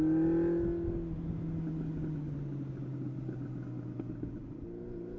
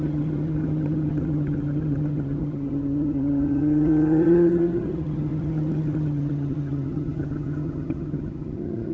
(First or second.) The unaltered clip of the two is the first